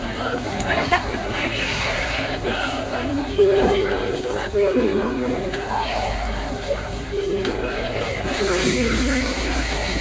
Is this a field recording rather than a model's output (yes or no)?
no